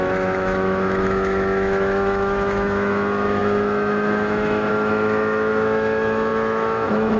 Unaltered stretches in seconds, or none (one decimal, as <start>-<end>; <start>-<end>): none